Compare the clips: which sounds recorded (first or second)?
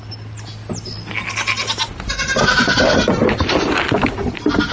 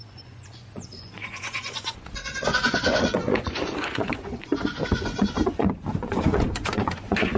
first